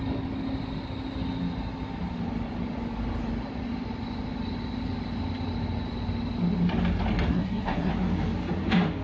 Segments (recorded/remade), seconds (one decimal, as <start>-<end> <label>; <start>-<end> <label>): 0.0-7.3 recorded; 7.3-7.9 remade; 7.9-9.0 recorded